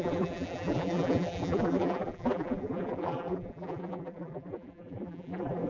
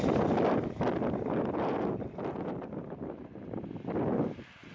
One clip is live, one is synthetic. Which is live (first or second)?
second